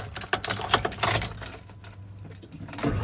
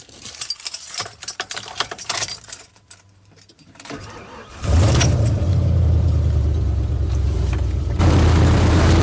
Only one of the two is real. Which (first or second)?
first